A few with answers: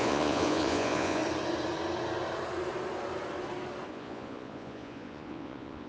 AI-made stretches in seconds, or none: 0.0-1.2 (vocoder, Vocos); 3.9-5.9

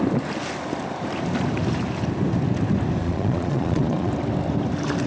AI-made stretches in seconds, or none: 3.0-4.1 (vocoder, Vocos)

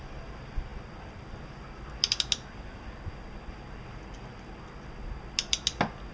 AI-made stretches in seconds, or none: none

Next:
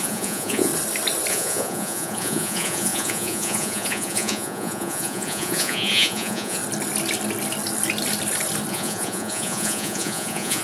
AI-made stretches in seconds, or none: 0.0-0.7 (vocoder, Vocos); 1.3-6.6; 8.7-10.6

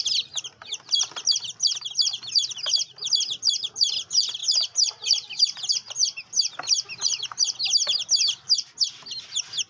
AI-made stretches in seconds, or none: none